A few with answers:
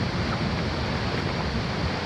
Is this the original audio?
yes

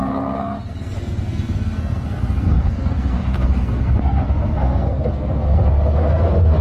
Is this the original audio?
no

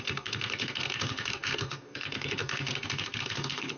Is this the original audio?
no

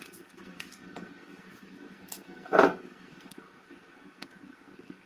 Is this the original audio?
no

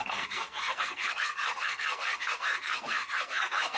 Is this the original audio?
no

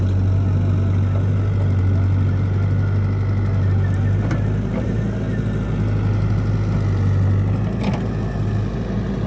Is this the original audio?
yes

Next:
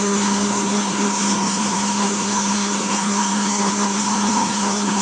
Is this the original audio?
no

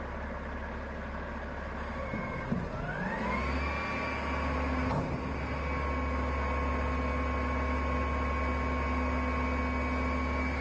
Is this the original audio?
yes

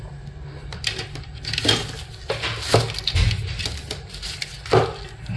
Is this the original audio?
yes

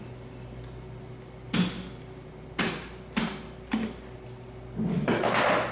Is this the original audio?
yes